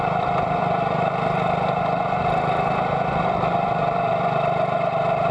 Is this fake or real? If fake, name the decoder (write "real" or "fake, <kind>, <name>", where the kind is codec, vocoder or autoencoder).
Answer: fake, vocoder, BigVGAN v2